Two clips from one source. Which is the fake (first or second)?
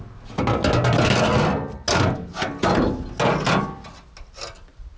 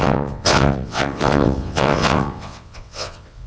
second